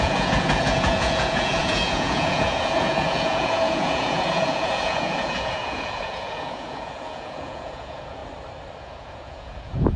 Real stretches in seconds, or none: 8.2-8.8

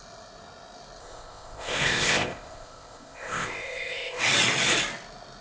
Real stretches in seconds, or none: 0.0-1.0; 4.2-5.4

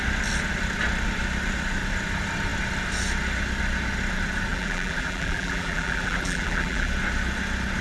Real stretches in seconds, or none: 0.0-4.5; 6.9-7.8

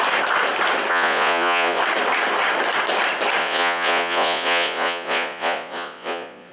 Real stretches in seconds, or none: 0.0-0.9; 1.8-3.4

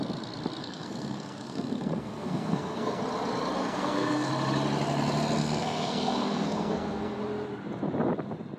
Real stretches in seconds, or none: 0.0-0.6; 3.0-3.6; 4.3-5.4; 7.2-8.6

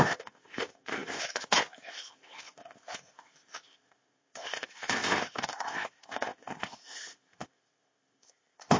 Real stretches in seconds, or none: none